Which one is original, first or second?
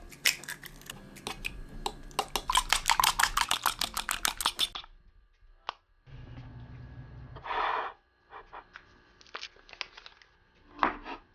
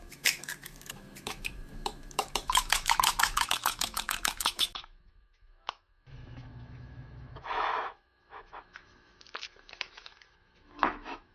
first